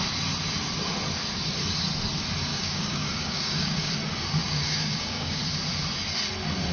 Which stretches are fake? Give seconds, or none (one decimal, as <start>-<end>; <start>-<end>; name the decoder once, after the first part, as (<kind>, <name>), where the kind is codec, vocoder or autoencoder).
2.5-3.9 (codec, DAC); 4.4-5.4